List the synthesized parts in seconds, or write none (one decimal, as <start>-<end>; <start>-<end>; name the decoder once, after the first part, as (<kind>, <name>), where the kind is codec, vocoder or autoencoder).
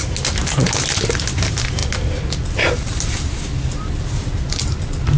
none